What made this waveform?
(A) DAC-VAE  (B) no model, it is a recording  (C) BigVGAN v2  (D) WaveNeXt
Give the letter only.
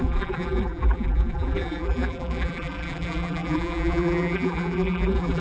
C